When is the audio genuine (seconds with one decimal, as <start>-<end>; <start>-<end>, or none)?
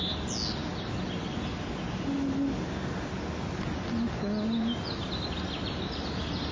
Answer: 0.0-6.5